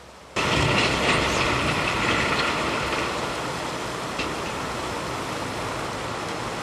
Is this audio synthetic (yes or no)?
no